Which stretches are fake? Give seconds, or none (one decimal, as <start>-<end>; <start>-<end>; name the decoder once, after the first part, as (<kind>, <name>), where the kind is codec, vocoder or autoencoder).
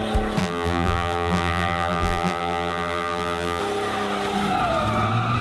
0.4-3.6 (vocoder, BigVGAN v2)